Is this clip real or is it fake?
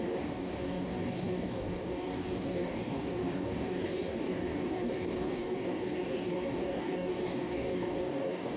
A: fake